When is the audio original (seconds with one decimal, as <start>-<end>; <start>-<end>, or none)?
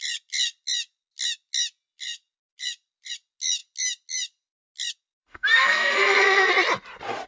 0.0-5.2; 6.5-7.3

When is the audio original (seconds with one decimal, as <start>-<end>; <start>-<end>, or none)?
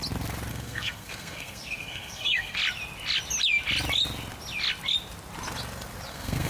0.0-0.5; 2.6-6.1